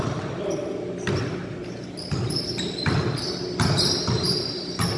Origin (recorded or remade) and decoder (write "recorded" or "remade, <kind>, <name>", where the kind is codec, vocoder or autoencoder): recorded